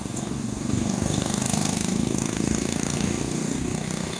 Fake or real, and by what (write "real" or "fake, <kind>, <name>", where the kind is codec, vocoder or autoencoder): fake, codec, DAC